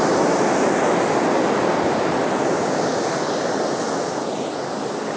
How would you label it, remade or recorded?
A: recorded